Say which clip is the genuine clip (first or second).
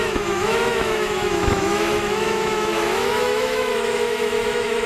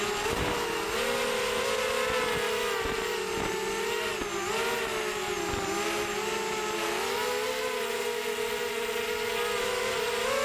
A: second